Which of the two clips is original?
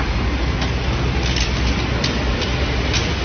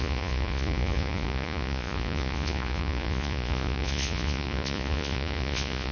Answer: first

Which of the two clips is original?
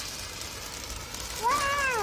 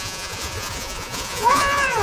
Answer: first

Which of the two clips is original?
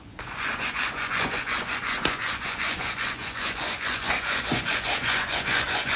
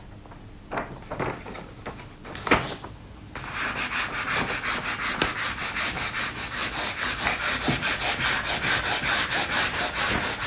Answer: second